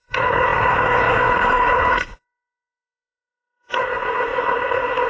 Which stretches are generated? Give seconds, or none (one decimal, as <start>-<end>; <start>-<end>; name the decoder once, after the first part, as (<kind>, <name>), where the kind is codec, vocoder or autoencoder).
0.0-5.1 (codec, SNAC)